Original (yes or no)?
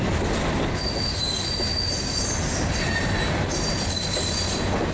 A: yes